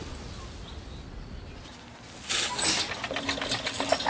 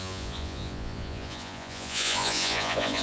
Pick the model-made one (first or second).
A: second